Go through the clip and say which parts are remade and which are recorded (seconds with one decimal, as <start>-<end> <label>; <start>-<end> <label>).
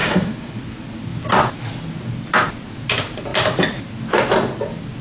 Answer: 0.0-0.6 remade; 0.6-5.0 recorded